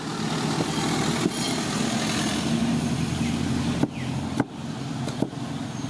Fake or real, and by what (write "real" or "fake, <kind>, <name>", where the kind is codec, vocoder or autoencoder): real